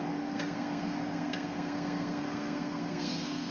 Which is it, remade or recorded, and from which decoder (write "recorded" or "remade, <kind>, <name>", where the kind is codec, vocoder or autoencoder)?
remade, codec, SNAC